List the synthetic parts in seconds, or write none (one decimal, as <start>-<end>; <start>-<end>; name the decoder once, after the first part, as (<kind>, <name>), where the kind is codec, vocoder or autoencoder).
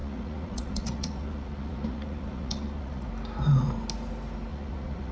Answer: 0.0-3.1 (vocoder, Vocos); 4.5-5.1